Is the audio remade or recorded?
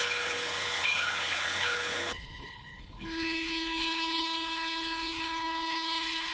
remade